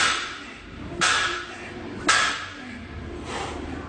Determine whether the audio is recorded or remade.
recorded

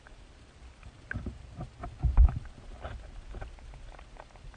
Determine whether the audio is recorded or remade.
recorded